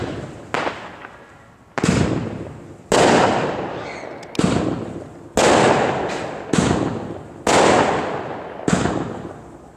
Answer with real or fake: real